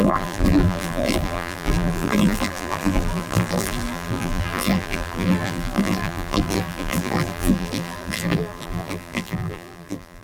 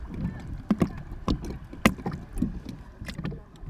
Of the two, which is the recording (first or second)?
second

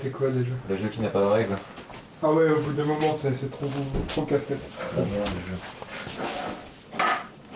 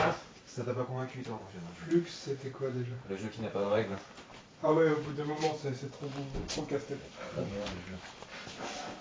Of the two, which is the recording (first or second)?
first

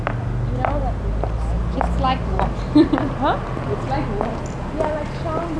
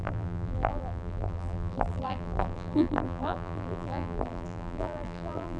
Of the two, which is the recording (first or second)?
first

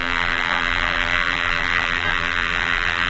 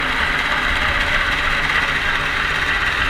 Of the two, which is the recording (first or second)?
second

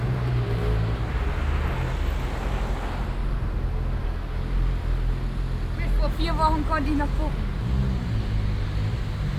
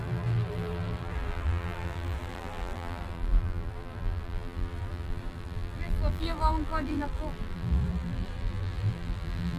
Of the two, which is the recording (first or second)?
first